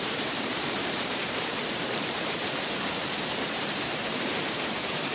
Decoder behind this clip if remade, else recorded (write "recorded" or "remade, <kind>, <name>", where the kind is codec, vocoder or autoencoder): remade, vocoder, BigVGAN v2